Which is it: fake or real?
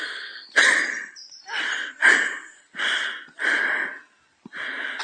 real